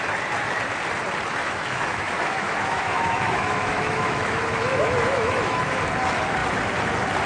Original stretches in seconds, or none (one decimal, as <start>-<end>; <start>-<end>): 0.0-1.4; 5.8-7.3